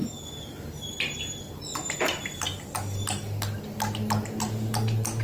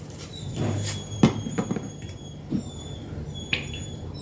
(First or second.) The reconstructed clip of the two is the second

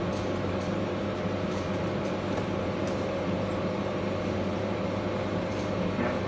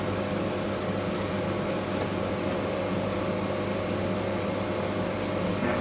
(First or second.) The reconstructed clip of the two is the first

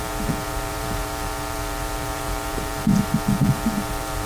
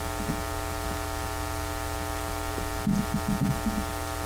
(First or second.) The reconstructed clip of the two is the first